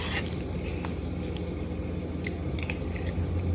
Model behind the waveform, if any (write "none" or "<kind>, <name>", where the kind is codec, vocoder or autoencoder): none